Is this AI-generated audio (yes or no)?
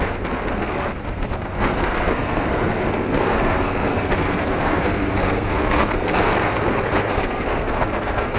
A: yes